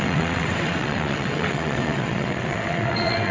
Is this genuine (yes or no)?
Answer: no